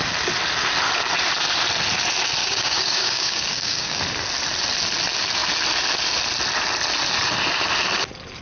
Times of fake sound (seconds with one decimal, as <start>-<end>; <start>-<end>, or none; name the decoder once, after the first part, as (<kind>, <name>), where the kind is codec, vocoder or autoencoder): 2.4-4.0 (codec, DAC)